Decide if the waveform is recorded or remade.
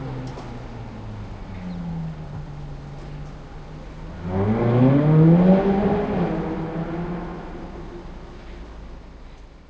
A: recorded